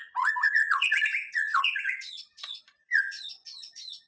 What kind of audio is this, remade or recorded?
remade